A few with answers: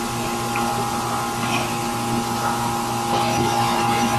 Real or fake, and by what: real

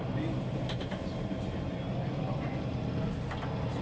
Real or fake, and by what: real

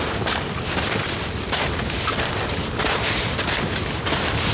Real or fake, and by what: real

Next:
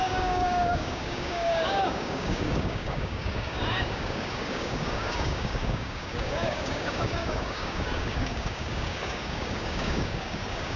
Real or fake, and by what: fake, codec, DAC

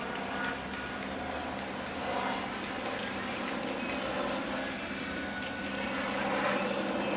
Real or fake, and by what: real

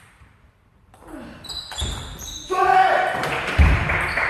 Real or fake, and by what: fake, vocoder, BigVGAN v2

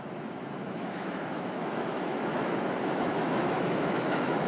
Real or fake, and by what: fake, autoencoder, DAC-VAE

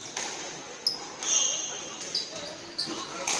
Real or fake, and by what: real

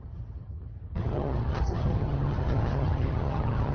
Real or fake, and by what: fake, vocoder, HiFi-GAN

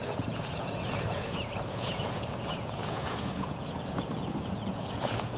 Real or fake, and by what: fake, vocoder, Vocos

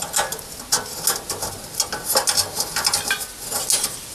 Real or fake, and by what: real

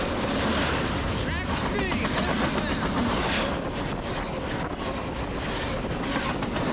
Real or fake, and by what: real